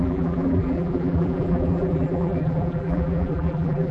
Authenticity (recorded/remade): remade